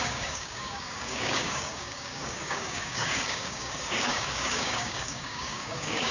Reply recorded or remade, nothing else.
remade